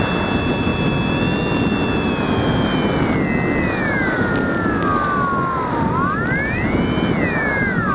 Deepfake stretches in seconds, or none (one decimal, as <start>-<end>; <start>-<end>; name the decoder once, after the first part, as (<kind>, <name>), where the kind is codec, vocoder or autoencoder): none